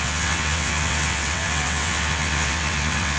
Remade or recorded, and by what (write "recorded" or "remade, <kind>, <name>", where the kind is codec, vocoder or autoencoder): remade, vocoder, WaveNeXt